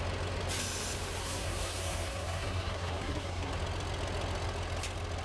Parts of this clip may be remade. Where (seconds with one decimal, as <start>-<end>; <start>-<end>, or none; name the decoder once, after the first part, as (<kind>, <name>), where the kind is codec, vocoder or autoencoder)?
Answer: 1.2-3.5 (codec, SNAC)